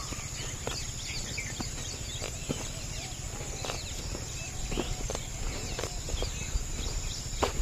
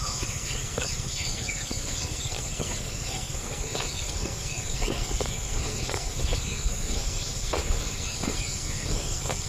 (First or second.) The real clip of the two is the first